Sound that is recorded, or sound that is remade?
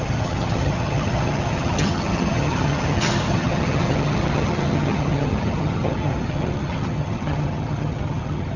remade